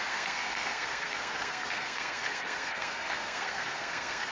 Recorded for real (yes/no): no